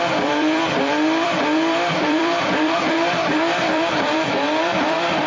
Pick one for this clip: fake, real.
fake